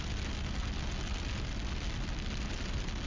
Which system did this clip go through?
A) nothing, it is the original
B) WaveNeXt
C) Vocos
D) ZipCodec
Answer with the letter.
A